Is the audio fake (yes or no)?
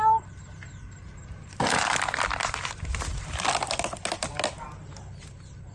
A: no